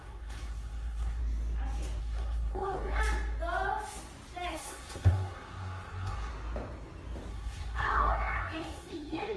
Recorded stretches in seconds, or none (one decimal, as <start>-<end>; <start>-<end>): 1.2-2.0; 3.0-4.5; 6.3-7.3